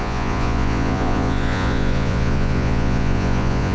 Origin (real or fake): fake